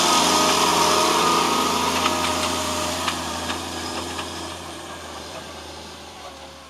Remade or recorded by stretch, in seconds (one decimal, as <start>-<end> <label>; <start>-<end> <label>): 0.0-2.3 recorded; 2.3-6.3 remade; 6.3-6.7 recorded